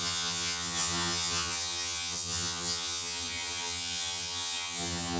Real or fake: fake